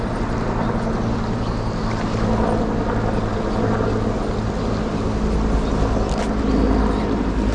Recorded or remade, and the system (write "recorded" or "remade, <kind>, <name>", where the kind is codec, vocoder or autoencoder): recorded